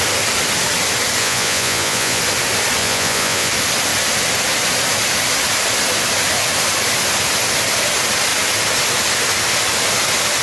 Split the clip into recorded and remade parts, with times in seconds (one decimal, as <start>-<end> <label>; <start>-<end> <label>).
0.0-1.2 recorded; 1.2-2.2 remade; 2.2-2.8 recorded; 2.8-3.5 remade; 3.5-10.4 recorded